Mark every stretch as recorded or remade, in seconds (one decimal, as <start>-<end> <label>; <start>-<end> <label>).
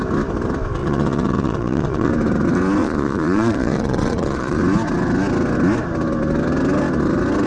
0.0-0.8 recorded; 0.8-2.1 remade; 2.1-2.8 recorded; 2.8-4.6 remade; 4.6-7.5 recorded